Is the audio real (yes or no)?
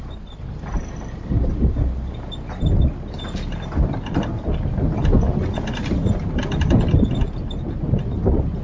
yes